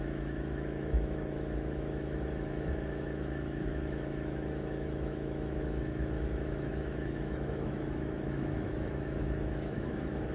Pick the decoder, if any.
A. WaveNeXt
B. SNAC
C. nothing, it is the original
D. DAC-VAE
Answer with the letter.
D